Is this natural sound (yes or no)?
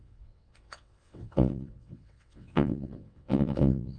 no